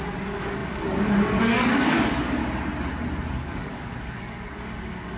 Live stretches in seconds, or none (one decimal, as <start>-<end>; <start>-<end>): 2.4-3.3